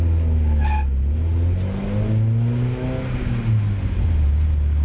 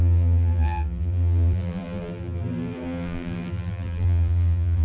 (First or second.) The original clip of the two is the first